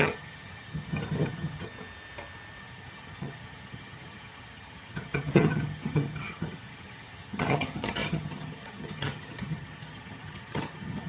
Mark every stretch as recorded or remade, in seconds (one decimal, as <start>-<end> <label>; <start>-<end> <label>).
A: 0.0-1.7 remade; 1.7-2.6 recorded; 2.6-11.1 remade